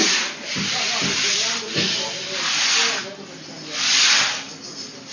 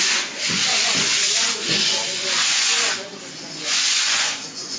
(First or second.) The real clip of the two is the first